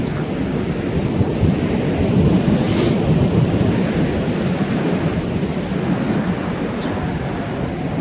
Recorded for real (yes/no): yes